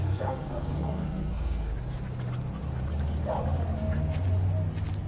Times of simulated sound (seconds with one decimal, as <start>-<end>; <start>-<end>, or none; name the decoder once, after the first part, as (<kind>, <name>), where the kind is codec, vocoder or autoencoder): 0.0-1.7 (codec, SNAC)